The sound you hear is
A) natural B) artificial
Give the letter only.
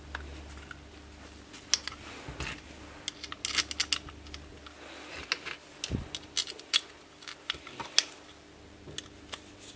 A